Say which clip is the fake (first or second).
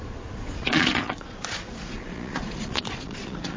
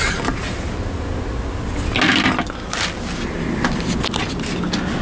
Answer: first